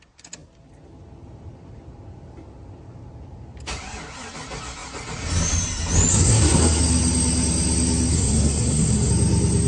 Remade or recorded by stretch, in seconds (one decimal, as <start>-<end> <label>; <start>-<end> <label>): 0.0-6.1 recorded; 6.1-6.8 remade; 6.8-8.1 recorded; 8.1-9.1 remade; 9.1-9.7 recorded

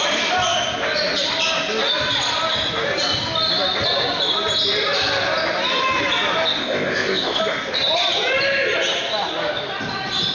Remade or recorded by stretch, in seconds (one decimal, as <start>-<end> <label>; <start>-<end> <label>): 0.0-6.6 recorded; 6.6-7.4 remade; 7.4-10.3 recorded

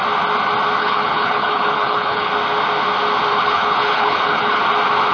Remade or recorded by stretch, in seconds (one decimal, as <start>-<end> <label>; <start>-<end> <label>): 0.0-0.8 recorded; 0.8-2.3 remade; 2.3-3.3 recorded; 3.3-4.6 remade; 4.6-5.1 recorded

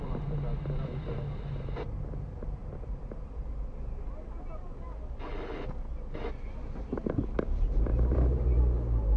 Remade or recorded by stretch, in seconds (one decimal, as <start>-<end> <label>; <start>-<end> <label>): 0.0-2.6 recorded; 2.6-3.5 remade; 3.5-7.9 recorded; 7.9-8.6 remade; 8.6-9.2 recorded